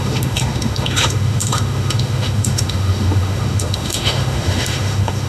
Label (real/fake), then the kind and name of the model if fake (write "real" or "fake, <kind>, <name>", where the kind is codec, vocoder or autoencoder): fake, autoencoder, DAC-VAE